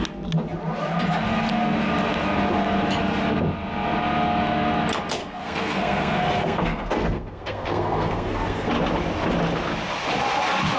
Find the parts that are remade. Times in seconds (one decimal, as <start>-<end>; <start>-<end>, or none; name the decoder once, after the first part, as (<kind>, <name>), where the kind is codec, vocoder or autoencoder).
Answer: 5.2-8.7 (codec, SNAC)